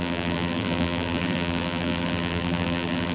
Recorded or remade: remade